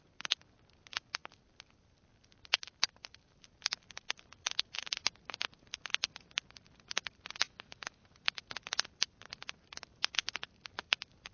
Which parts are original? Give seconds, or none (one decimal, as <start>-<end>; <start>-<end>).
0.0-11.3